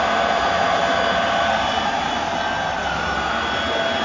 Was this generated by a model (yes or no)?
no